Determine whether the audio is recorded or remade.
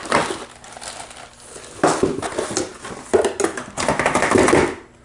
recorded